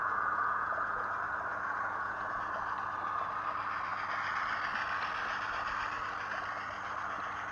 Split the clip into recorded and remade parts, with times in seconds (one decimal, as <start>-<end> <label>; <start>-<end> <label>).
0.0-1.1 remade; 1.1-1.5 recorded; 1.5-2.4 remade; 2.4-7.5 recorded